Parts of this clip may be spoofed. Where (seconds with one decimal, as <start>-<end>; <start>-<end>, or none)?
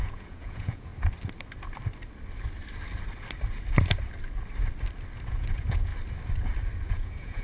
0.0-0.9; 5.3-5.9; 6.9-7.4